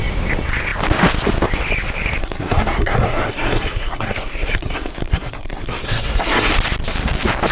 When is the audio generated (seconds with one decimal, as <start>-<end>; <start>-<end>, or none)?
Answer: 2.2-6.5

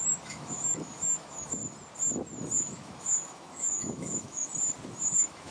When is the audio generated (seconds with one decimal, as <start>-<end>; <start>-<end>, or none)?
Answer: 0.0-1.6; 2.6-4.5; 5.1-5.5

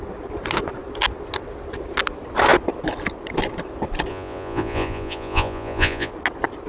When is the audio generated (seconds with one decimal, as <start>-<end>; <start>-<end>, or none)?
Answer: 4.1-6.1

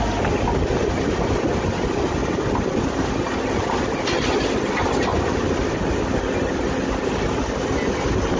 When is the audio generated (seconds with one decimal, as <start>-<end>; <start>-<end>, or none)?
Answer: none

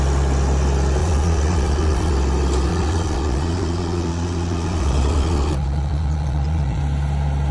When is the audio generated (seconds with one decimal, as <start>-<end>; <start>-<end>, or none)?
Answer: 1.0-2.1; 2.7-6.8

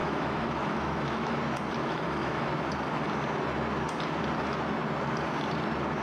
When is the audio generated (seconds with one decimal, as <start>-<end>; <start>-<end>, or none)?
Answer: 0.0-1.4; 1.8-2.5

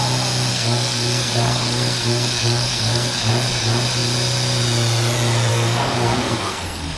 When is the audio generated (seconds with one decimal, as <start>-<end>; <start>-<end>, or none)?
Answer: 0.5-3.3; 5.5-7.0

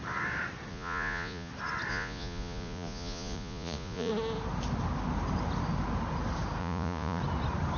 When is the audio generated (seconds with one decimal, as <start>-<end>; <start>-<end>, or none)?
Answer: 0.7-1.5; 1.9-4.1; 6.6-7.2